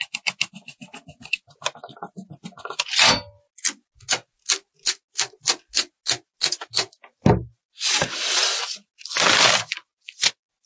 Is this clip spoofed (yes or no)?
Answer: no